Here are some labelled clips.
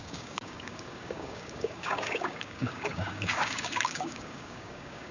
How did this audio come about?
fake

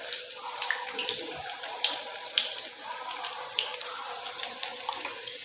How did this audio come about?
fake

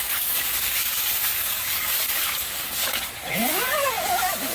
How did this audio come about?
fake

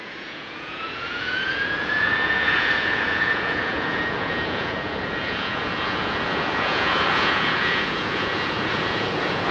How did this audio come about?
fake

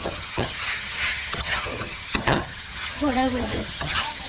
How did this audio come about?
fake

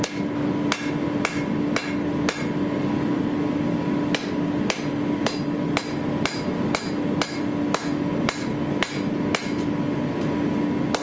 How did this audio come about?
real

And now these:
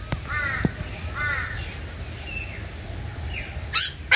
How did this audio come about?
real